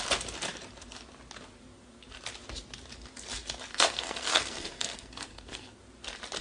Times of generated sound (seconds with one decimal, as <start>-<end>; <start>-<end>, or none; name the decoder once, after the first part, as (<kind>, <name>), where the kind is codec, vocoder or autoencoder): 3.7-5.8 (codec, SNAC)